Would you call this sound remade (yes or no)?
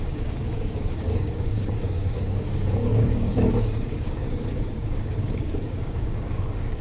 yes